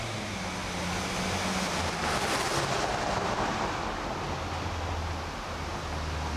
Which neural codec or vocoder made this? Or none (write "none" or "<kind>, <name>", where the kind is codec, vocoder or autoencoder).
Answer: none